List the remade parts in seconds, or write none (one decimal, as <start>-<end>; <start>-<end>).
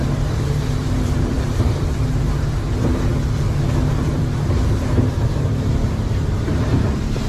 0.0-3.1; 3.9-7.3